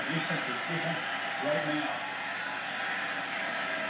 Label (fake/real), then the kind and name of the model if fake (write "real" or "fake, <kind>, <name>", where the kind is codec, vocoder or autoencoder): fake, vocoder, BigVGAN v2